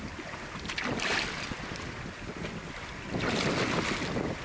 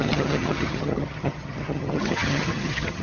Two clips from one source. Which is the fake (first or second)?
second